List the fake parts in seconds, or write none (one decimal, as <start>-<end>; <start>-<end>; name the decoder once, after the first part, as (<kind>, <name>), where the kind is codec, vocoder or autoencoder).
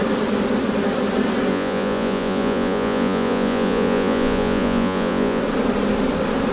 1.5-5.4 (vocoder, Vocos)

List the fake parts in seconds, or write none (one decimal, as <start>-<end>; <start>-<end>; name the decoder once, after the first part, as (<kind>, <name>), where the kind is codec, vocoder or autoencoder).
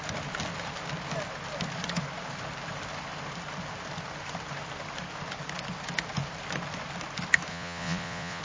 7.5-8.4 (vocoder, Vocos)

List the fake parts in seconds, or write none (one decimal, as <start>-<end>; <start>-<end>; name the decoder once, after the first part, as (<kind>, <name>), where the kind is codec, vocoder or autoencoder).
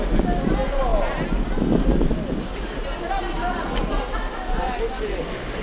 none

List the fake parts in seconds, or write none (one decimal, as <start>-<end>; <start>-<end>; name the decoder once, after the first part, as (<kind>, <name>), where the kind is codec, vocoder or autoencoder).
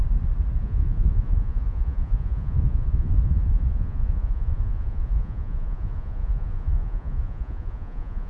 0.6-8.3 (vocoder, Vocos)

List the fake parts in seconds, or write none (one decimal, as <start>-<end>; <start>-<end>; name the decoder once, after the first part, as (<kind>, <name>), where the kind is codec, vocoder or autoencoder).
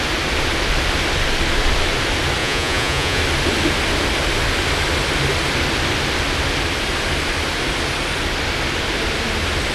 2.4-3.2 (vocoder, Vocos)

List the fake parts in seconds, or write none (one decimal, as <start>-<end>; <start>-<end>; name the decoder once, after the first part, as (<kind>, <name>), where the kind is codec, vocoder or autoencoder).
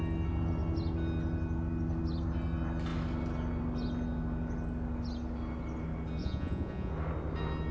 6.2-6.9 (vocoder, Vocos)